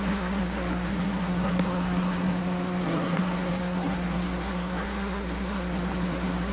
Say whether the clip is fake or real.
fake